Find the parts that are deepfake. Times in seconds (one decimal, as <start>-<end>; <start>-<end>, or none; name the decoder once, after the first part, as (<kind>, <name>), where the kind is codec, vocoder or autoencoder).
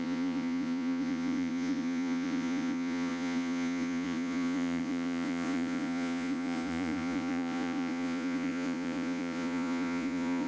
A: 0.0-10.5 (vocoder, Vocos)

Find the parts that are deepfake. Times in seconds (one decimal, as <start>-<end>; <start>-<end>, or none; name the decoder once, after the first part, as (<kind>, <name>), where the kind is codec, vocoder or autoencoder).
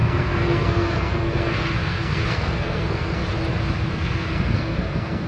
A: 0.0-3.2 (codec, SNAC); 3.9-5.3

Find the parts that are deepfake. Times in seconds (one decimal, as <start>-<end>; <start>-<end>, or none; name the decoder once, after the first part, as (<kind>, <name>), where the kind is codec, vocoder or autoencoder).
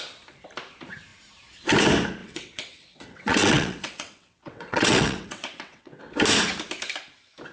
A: 2.2-6.0 (vocoder, WaveNeXt)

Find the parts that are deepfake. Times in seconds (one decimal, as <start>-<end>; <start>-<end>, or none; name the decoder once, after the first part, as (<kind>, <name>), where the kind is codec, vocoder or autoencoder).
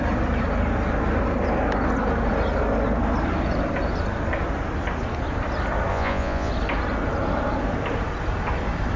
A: 5.9-6.5 (vocoder, Vocos)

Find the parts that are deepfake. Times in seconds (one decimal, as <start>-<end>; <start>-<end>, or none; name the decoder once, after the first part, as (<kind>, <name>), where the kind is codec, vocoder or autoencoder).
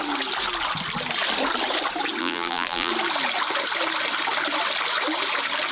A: 2.2-2.9 (vocoder, BigVGAN v2)